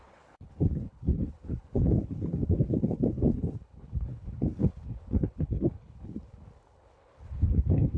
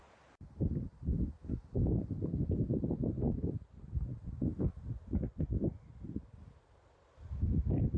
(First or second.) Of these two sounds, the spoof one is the first